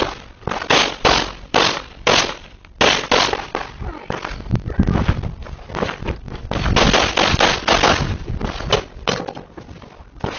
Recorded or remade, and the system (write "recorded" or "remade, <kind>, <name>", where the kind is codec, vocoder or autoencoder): recorded